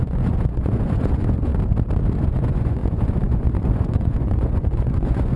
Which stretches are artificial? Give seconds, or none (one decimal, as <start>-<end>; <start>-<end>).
0.0-1.5; 2.2-5.4